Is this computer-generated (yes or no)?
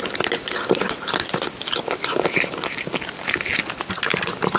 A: no